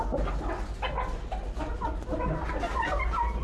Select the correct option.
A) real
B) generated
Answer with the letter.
A